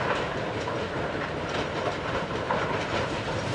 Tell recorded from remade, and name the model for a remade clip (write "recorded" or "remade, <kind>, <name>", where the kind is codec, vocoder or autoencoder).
remade, vocoder, BigVGAN v2